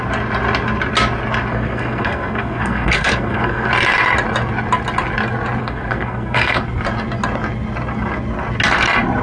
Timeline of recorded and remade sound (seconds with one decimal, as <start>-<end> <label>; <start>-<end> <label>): 0.0-1.5 recorded; 1.5-3.7 remade; 3.7-5.6 recorded; 5.6-6.6 remade; 6.6-9.2 recorded